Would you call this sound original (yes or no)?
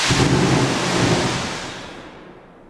yes